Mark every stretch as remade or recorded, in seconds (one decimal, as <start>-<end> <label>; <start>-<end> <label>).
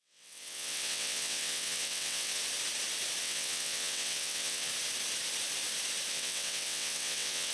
0.0-2.4 remade; 2.4-3.2 recorded; 3.2-4.7 remade; 4.7-6.1 recorded; 6.1-7.5 remade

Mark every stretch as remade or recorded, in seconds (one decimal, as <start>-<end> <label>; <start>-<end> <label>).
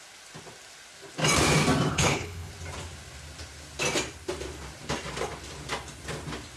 0.0-1.9 recorded; 1.9-2.5 remade; 2.5-6.6 recorded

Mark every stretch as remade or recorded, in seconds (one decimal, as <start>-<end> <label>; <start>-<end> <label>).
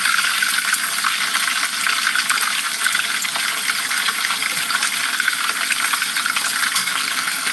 0.0-6.8 recorded; 6.8-7.5 remade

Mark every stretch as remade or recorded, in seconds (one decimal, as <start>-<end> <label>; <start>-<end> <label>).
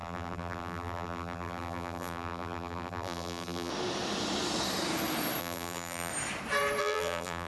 0.0-3.7 remade; 3.7-5.4 recorded; 5.4-6.1 remade; 6.1-6.8 recorded; 6.8-7.5 remade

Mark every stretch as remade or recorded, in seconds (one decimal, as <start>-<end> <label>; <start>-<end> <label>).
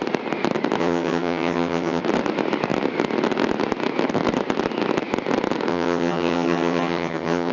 0.0-0.8 recorded; 0.8-2.0 remade; 2.0-5.7 recorded; 5.7-7.5 remade